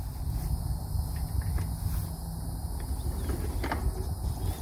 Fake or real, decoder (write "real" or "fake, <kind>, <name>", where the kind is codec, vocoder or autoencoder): real